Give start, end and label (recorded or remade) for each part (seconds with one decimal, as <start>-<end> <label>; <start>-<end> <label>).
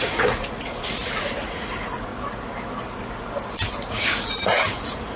0.0-2.1 remade; 2.1-3.9 recorded; 3.9-5.2 remade